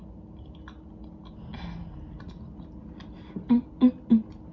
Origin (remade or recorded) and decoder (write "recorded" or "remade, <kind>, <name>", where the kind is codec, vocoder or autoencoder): recorded